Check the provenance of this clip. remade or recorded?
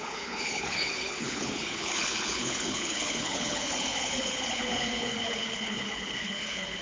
remade